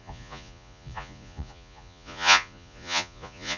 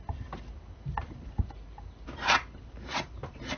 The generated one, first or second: first